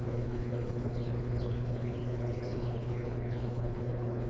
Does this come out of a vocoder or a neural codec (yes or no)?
yes